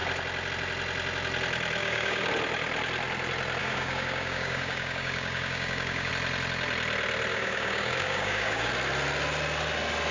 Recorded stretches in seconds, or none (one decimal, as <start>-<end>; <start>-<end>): 0.0-1.8; 2.3-3.6; 6.1-7.3; 8.7-10.1